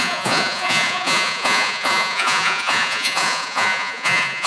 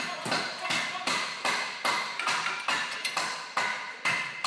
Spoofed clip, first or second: first